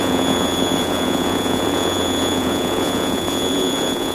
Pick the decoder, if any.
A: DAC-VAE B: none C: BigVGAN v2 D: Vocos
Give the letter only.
D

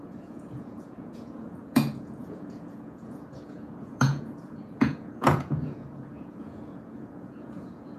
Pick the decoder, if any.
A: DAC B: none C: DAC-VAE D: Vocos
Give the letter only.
D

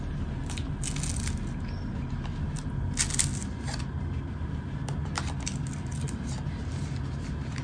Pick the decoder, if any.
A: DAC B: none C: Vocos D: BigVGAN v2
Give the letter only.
B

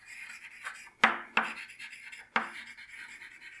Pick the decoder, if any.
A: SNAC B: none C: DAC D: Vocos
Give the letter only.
B